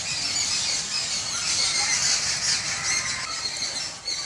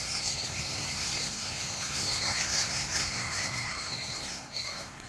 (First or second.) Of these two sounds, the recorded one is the first